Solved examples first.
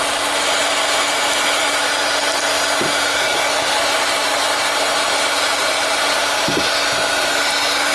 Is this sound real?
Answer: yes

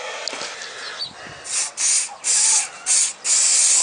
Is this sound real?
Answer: yes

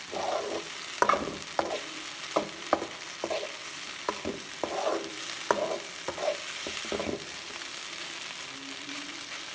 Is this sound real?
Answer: yes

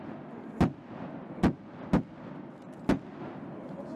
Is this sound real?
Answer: yes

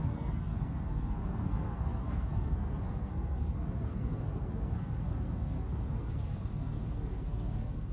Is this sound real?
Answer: no